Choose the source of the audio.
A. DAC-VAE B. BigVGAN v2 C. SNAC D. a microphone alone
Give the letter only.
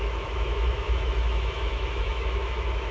A